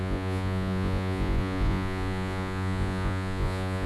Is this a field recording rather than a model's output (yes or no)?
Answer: no